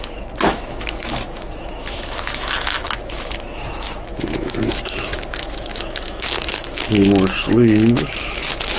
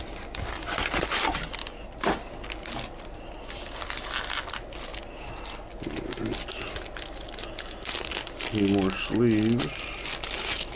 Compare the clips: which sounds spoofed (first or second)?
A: first